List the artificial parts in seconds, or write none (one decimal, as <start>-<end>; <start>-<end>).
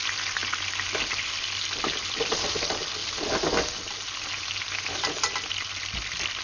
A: none